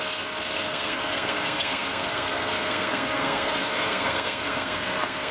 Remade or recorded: remade